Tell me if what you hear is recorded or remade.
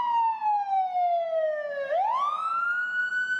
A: recorded